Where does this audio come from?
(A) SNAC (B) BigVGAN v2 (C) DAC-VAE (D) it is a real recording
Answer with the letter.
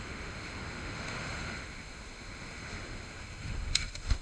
C